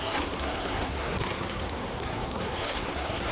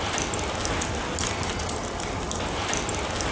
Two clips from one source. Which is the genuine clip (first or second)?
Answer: second